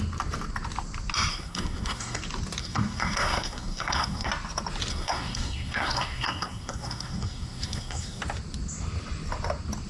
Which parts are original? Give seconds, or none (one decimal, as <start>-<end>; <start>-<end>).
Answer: 0.0-1.3; 2.2-2.6; 4.3-4.9; 8.2-9.9